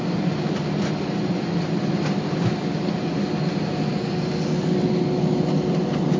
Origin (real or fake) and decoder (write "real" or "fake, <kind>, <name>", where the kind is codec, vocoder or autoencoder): real